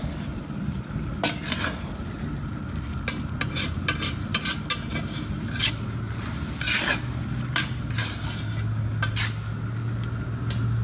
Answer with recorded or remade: recorded